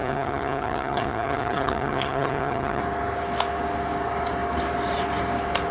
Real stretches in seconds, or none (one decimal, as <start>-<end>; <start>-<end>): 2.8-5.7